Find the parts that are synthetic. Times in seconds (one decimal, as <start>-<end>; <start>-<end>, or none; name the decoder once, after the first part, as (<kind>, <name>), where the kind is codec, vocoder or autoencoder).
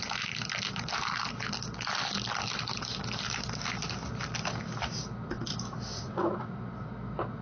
5.9-6.5 (vocoder, WaveNeXt)